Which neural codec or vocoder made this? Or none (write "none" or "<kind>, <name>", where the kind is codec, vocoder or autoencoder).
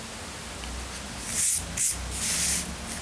none